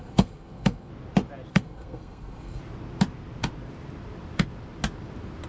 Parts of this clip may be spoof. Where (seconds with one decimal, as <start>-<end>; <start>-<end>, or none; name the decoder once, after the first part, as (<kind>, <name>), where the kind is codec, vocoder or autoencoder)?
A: 0.0-0.9 (codec, SNAC); 1.5-2.6